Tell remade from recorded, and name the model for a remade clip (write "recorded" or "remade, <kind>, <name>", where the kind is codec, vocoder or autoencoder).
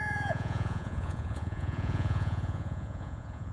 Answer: remade, vocoder, Vocos